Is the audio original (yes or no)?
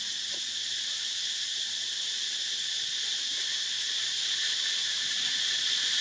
no